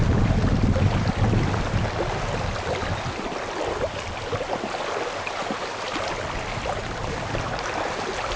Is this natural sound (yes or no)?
yes